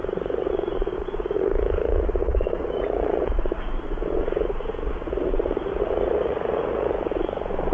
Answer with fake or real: fake